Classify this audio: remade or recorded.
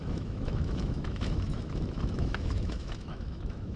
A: remade